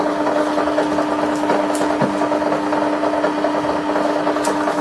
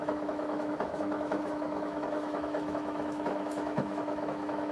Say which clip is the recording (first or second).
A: first